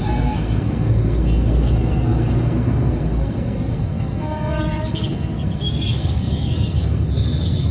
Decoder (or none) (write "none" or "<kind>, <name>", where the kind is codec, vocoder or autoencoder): codec, SNAC